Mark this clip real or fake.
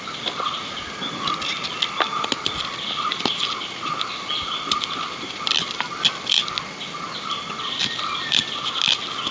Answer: real